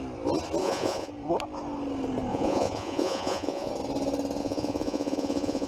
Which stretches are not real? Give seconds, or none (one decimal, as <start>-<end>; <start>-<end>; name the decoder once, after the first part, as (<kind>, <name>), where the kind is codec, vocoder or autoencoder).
0.6-1.1 (vocoder, Vocos); 2.3-3.7; 4.4-5.7